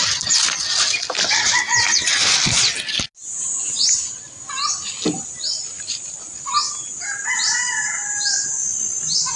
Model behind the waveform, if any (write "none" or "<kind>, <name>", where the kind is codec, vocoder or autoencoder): none